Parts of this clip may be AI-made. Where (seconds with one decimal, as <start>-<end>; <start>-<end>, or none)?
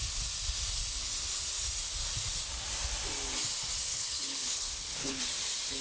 3.9-5.2